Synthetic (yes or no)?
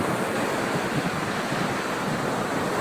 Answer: no